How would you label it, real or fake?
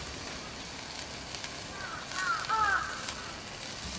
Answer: real